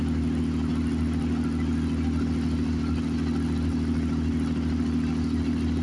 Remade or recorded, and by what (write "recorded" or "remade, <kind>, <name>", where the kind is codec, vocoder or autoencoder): recorded